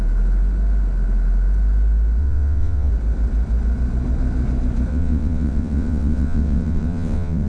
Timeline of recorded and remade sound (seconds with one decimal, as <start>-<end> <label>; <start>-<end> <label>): 0.0-2.2 recorded; 2.2-2.9 remade; 2.9-4.9 recorded; 4.9-7.5 remade